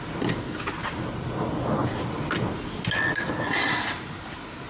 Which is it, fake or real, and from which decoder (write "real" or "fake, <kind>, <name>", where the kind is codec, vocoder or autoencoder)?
real